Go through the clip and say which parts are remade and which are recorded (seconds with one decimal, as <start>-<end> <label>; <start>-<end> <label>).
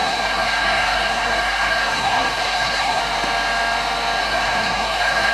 0.0-3.0 remade; 3.0-4.2 recorded; 4.2-5.3 remade